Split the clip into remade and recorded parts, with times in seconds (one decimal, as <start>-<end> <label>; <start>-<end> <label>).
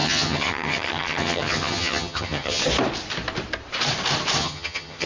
0.0-2.6 remade; 2.6-4.4 recorded; 4.4-5.1 remade